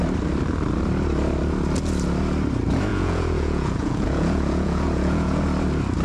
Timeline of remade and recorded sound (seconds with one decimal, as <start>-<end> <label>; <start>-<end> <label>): 0.0-2.9 recorded; 2.9-5.4 remade; 5.4-6.0 recorded